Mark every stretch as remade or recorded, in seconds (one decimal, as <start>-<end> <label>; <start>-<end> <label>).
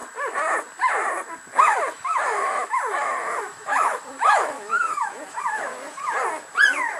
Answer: 0.0-1.5 recorded; 1.5-5.4 remade; 5.4-7.0 recorded